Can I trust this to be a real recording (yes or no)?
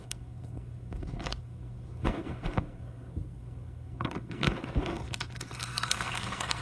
no